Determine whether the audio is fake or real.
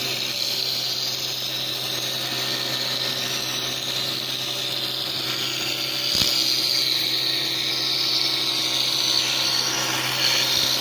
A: real